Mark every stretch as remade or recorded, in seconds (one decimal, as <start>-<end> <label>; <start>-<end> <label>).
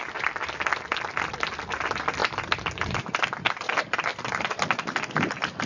0.0-2.2 recorded; 2.2-3.0 remade; 3.0-4.1 recorded; 4.1-5.7 remade